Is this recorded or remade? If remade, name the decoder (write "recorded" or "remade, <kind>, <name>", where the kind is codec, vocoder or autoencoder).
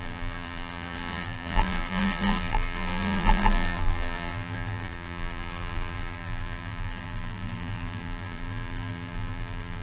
remade, vocoder, BigVGAN v2